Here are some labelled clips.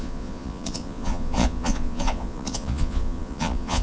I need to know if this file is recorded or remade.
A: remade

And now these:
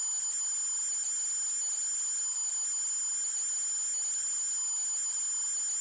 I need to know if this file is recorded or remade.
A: recorded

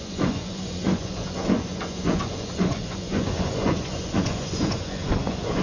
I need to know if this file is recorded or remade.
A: remade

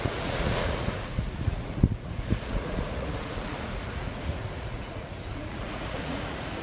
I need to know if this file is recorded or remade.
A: remade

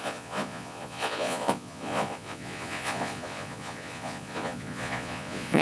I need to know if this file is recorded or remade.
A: remade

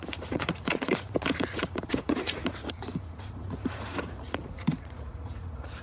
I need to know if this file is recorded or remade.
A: remade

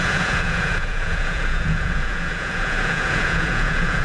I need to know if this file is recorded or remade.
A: remade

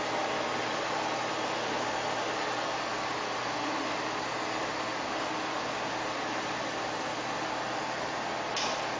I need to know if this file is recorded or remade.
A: recorded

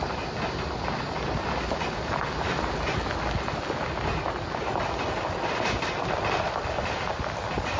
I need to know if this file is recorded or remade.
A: recorded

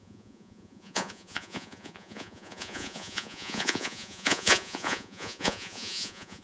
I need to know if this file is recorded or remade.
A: remade